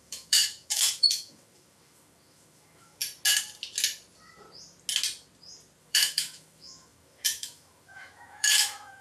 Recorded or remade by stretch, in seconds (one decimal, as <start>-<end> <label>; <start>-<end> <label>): 0.0-3.0 remade; 3.0-5.8 recorded; 5.8-9.0 remade